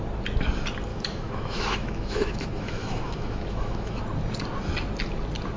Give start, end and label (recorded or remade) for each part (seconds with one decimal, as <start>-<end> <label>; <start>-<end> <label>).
0.0-0.9 recorded; 0.9-4.0 remade; 4.0-5.6 recorded